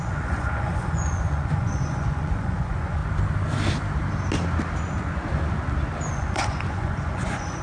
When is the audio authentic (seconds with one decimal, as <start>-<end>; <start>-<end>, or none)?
3.0-6.1